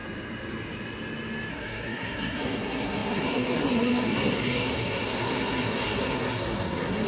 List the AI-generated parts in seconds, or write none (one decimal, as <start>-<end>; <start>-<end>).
1.5-7.1